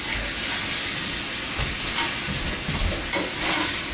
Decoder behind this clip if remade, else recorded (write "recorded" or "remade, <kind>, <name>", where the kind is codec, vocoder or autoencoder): recorded